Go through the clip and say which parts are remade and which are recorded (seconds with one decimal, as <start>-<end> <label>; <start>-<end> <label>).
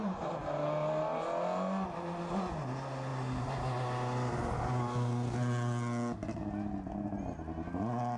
0.0-8.2 recorded